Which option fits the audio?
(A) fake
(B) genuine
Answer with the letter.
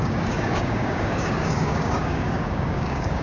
A